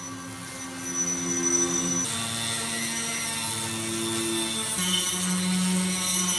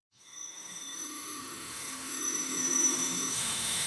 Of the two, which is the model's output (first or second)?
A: second